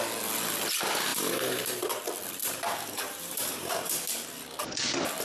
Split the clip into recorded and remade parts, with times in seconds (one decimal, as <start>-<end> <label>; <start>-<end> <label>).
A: 0.0-1.1 recorded; 1.1-2.0 remade; 2.0-2.4 recorded; 2.4-3.9 remade; 3.9-5.2 recorded

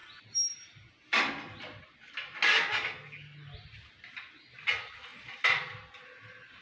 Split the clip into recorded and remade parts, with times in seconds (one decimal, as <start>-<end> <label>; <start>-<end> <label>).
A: 0.0-5.1 recorded; 5.1-5.9 remade; 5.9-6.6 recorded

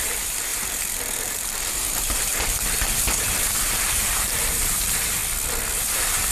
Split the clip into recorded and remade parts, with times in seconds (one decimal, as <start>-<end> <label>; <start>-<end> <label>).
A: 0.0-5.2 remade; 5.2-5.7 recorded; 5.7-6.3 remade

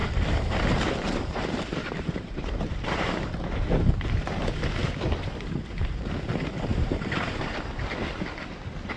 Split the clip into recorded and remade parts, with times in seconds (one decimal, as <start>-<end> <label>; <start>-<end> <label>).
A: 0.0-3.7 remade; 3.7-6.7 recorded; 6.7-7.6 remade; 7.6-9.0 recorded

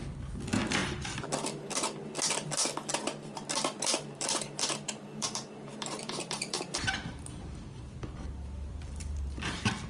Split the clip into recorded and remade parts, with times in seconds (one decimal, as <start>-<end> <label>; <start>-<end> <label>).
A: 0.0-3.6 recorded; 3.6-7.2 remade; 7.2-7.7 recorded; 7.7-9.9 remade

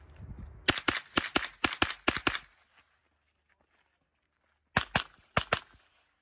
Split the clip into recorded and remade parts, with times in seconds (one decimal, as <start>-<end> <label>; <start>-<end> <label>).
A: 0.0-6.2 recorded

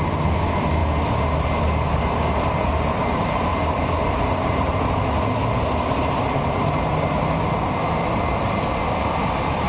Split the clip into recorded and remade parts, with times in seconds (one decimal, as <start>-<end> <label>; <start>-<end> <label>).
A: 0.0-3.5 recorded; 3.5-4.8 remade; 4.8-9.7 recorded

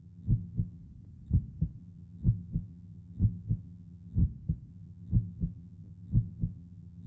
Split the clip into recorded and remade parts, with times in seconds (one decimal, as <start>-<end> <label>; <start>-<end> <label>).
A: 0.0-0.8 remade; 0.8-1.8 recorded; 1.8-4.2 remade; 4.2-4.7 recorded; 4.7-7.1 remade